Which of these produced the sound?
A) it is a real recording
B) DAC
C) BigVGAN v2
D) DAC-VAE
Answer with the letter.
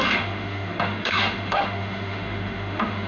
D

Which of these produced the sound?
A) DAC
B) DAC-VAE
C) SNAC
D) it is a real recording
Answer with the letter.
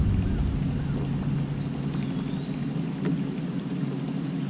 D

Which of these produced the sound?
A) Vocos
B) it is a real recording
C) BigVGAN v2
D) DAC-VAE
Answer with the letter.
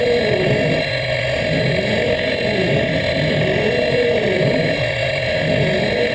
B